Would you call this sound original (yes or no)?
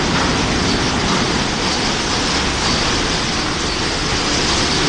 yes